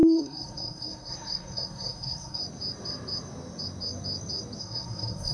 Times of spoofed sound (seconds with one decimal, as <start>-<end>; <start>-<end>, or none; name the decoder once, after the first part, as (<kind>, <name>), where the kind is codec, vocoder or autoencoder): 0.0-2.4 (codec, SNAC); 4.6-5.3